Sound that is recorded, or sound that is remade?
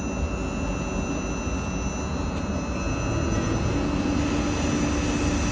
recorded